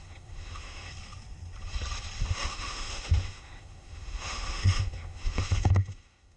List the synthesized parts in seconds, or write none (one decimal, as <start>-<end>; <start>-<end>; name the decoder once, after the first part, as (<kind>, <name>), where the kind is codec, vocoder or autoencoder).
0.0-0.9 (autoencoder, DAC-VAE); 2.2-6.4